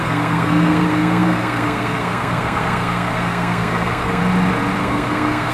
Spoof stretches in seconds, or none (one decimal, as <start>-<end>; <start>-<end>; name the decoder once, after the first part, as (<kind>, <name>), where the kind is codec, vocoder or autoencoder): 0.0-4.2 (codec, SNAC); 4.8-5.5